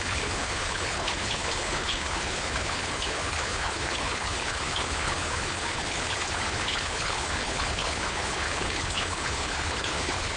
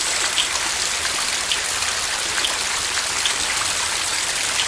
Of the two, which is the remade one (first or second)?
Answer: first